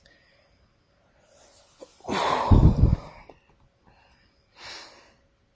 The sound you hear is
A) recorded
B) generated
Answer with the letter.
A